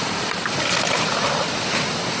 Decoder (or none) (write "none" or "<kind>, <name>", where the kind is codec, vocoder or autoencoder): none